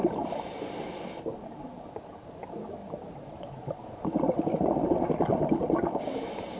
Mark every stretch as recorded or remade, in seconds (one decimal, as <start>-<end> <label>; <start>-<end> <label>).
0.0-6.6 recorded